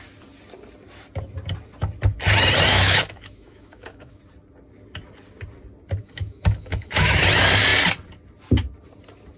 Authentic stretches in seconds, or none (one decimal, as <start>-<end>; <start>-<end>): 0.0-2.7; 4.2-6.0; 7.2-9.4